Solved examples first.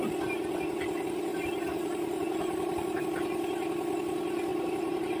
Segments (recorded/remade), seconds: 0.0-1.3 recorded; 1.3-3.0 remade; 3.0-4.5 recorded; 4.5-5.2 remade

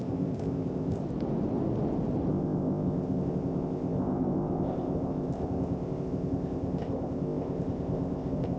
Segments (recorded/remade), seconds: 0.0-1.0 remade; 1.0-2.3 recorded; 2.3-8.6 remade

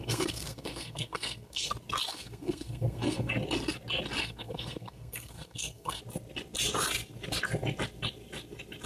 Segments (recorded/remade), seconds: 0.0-1.7 remade; 1.7-2.1 recorded; 2.1-3.3 remade; 3.3-4.2 recorded; 4.2-6.0 remade; 6.0-8.9 recorded

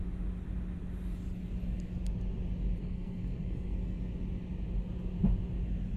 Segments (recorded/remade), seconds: 0.0-2.8 recorded; 2.8-4.0 remade; 4.0-6.0 recorded

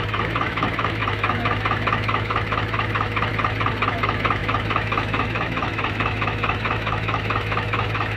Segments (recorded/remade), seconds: 0.0-3.3 remade; 3.3-3.9 recorded; 3.9-8.2 remade

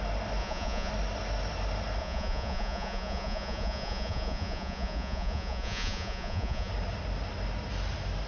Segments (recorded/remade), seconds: 0.0-0.4 recorded; 0.4-0.9 remade; 0.9-2.0 recorded; 2.0-6.7 remade; 6.7-8.3 recorded